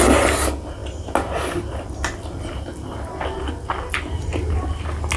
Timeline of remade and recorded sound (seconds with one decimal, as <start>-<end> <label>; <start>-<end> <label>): 0.0-5.2 recorded